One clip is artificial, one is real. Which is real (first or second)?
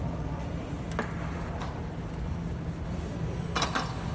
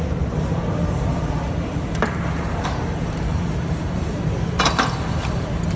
first